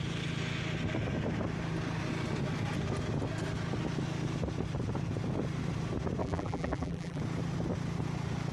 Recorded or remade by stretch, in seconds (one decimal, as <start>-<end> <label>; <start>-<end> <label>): 0.0-6.2 recorded; 6.2-7.2 remade; 7.2-8.5 recorded